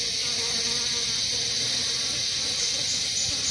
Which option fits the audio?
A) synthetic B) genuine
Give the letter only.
B